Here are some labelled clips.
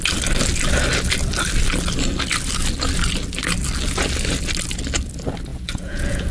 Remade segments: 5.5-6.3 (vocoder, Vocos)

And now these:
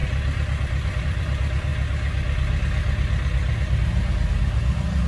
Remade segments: 0.0-1.7 (vocoder, BigVGAN v2)

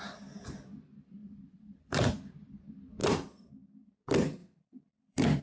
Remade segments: 1.2-2.3 (vocoder, BigVGAN v2); 3.0-3.5; 4.4-5.4

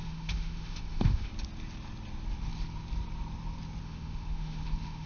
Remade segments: 0.0-1.3 (autoencoder, DAC-VAE); 3.8-5.1

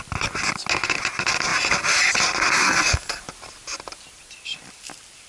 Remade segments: 2.6-3.2 (codec, SNAC)

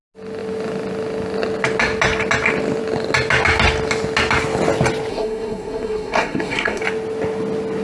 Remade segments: 5.1-6.8 (codec, SNAC)

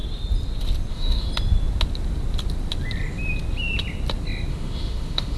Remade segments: 0.9-1.3 (autoencoder, DAC-VAE); 4.5-5.4